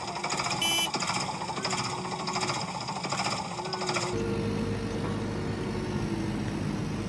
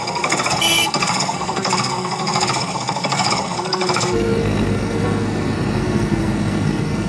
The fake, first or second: second